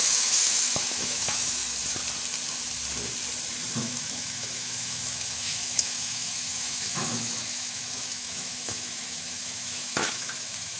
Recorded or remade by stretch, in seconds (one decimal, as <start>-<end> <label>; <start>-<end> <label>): 0.0-1.6 remade; 1.6-3.8 recorded; 3.8-10.8 remade

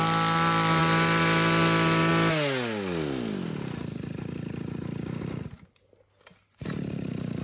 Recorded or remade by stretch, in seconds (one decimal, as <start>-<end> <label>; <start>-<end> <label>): 0.0-7.4 recorded